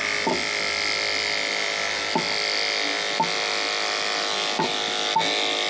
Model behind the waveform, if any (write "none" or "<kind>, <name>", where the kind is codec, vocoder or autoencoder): none